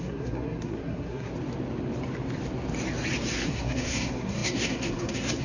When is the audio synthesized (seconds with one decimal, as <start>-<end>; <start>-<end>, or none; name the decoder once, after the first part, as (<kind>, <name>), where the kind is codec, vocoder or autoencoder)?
0.0-1.3 (codec, SNAC); 3.3-5.4